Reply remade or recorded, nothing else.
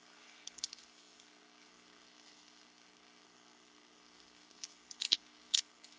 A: remade